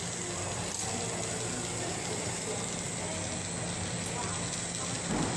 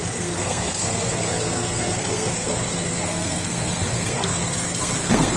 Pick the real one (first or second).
first